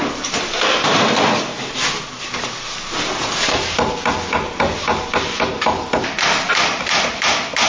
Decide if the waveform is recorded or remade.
recorded